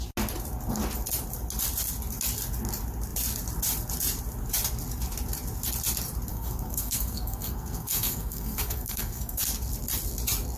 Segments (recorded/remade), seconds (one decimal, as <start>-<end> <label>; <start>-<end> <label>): 0.0-6.3 recorded; 6.3-9.4 remade; 9.4-10.6 recorded